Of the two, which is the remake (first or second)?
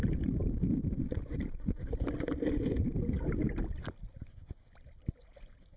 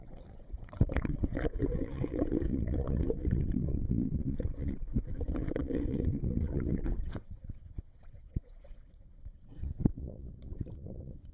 second